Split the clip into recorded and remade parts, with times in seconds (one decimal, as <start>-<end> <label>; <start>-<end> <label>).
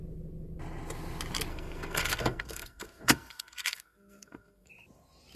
0.0-1.5 recorded; 1.5-4.7 remade; 4.7-5.4 recorded